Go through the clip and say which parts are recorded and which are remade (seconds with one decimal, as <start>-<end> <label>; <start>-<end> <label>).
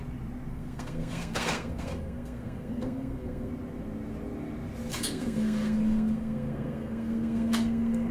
0.0-0.5 recorded; 0.5-3.5 remade; 3.5-4.9 recorded; 4.9-8.1 remade